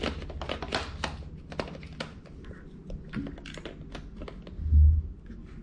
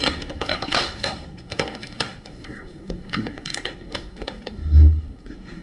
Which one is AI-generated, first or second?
second